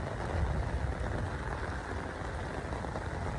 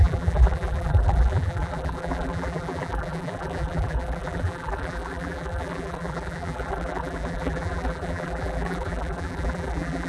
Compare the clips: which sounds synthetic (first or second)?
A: second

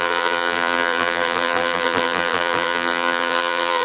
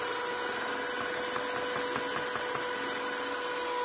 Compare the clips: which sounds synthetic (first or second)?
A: first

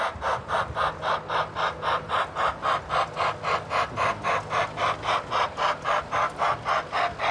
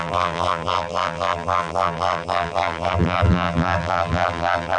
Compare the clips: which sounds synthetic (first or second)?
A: second